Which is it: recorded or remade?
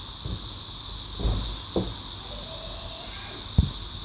recorded